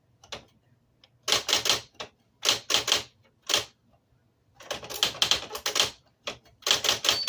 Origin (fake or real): real